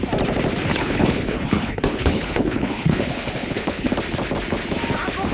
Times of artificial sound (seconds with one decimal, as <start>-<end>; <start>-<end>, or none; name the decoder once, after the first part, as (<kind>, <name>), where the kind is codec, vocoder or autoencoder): 0.7-3.9 (codec, HILCodec)